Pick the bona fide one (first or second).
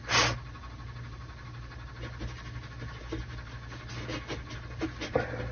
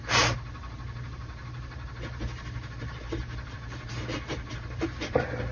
first